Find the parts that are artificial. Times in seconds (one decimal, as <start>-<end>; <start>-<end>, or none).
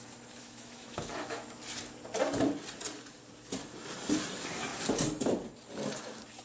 0.4-1.6